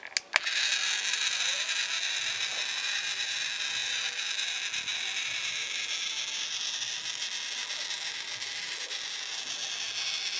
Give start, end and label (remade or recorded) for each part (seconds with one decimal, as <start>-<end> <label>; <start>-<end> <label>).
0.0-10.4 recorded